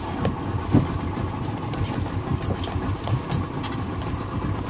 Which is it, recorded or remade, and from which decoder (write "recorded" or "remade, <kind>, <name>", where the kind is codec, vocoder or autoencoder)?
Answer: recorded